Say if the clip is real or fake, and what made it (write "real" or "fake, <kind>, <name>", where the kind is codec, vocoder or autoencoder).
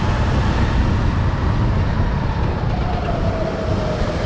real